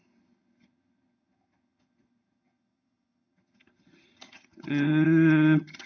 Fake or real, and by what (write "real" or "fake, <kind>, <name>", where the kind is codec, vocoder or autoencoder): fake, vocoder, HiFi-GAN